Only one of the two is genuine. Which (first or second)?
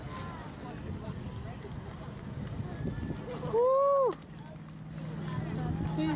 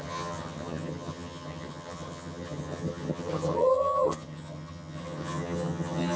first